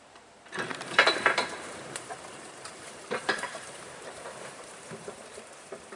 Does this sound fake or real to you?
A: fake